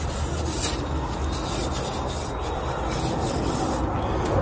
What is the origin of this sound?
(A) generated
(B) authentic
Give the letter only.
B